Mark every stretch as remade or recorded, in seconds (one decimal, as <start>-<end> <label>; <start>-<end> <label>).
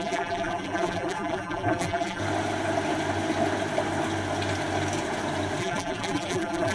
0.0-2.2 remade; 2.2-5.6 recorded; 5.6-6.7 remade